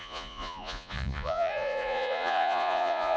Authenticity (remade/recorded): remade